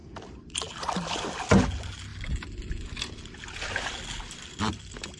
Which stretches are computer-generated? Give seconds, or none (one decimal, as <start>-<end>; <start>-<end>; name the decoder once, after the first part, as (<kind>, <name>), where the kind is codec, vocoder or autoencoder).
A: none